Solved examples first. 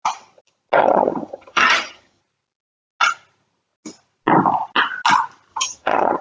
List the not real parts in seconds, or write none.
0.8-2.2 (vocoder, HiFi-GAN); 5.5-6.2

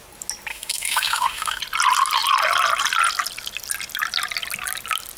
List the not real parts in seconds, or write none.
0.5-1.6 (autoencoder, DAC-VAE)

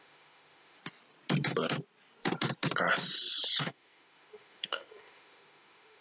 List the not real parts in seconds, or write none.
0.0-0.8 (autoencoder, DAC-VAE); 3.6-6.0

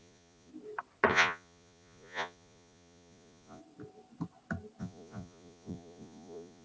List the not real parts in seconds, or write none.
0.0-0.5 (vocoder, Vocos); 1.1-3.6; 4.8-6.6

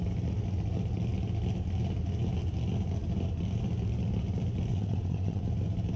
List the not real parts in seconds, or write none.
4.7-5.4 (vocoder, WaveNeXt)

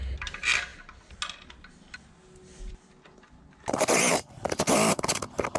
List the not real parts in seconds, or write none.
none

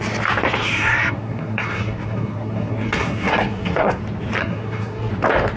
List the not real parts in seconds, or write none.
0.6-4.0 (codec, SNAC); 4.4-5.1